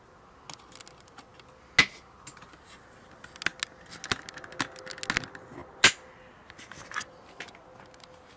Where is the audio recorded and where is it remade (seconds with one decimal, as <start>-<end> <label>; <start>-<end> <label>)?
0.0-8.4 recorded